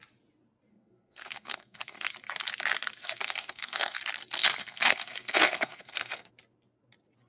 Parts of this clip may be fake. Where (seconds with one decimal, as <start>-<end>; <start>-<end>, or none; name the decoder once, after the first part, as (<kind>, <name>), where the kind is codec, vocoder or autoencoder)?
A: 0.7-2.1 (codec, SNAC); 3.0-4.0; 4.4-6.3